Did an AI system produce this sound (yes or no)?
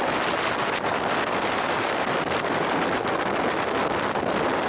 no